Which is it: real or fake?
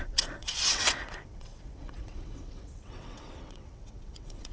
fake